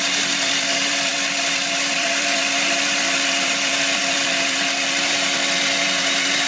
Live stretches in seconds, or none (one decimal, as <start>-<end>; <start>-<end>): none